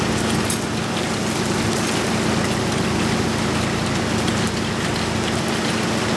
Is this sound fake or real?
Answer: real